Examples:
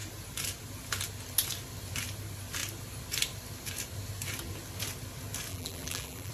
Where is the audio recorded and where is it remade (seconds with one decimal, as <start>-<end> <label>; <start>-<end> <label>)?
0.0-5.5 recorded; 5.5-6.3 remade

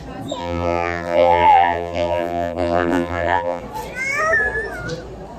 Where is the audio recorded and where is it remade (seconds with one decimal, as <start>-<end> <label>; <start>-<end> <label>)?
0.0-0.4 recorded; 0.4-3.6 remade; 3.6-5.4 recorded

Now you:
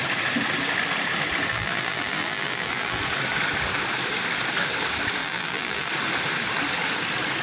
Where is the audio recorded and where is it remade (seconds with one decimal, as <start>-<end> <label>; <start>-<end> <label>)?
0.0-1.5 recorded; 1.5-3.0 remade; 3.0-5.2 recorded; 5.2-5.9 remade; 5.9-7.4 recorded

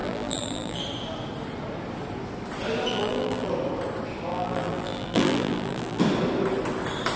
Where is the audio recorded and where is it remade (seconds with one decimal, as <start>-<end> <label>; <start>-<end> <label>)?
0.0-0.8 remade; 0.8-2.9 recorded; 2.9-3.5 remade; 3.5-4.3 recorded; 4.3-6.0 remade; 6.0-7.2 recorded

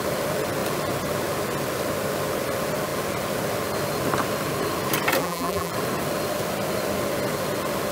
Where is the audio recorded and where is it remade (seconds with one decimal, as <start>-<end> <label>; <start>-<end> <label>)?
0.0-5.2 recorded; 5.2-5.7 remade; 5.7-7.9 recorded

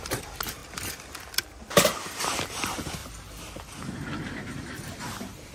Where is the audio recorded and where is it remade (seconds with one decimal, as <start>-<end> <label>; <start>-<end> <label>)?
0.0-0.6 remade; 0.6-2.2 recorded; 2.2-3.0 remade; 3.0-3.8 recorded; 3.8-5.5 remade